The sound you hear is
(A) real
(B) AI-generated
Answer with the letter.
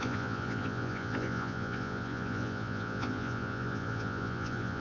B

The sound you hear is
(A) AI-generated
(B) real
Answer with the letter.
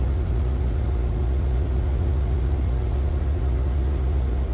A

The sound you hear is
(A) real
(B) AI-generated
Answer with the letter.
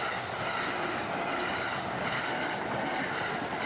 A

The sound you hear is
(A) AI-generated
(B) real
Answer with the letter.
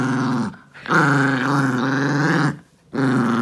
B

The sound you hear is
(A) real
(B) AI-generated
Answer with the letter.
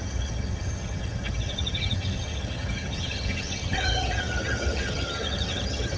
B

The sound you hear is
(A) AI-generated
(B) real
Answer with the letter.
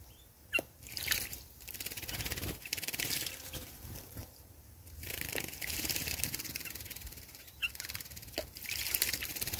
A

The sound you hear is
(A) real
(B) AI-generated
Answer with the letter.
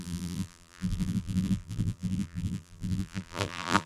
B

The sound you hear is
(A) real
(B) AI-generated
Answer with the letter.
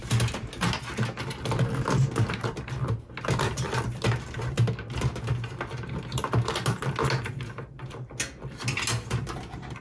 A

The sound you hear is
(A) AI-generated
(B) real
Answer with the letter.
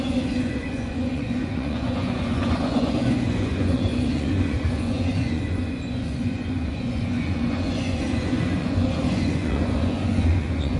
A